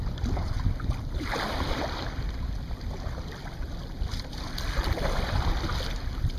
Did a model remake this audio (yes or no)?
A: no